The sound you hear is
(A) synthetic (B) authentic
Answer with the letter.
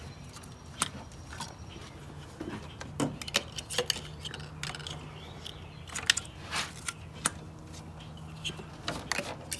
B